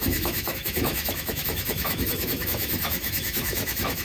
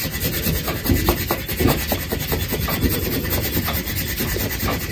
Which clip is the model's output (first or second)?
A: first